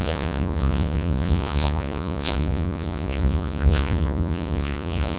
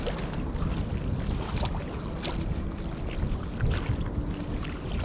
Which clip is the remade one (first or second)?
first